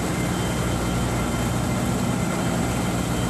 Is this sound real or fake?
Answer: real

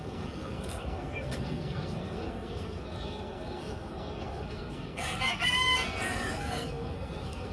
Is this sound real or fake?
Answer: fake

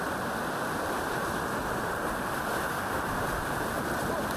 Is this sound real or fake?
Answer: real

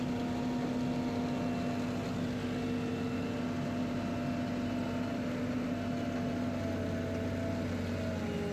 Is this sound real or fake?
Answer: real